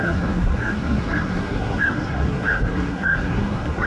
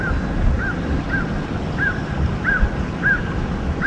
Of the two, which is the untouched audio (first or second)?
second